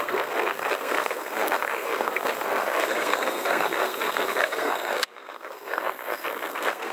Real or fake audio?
fake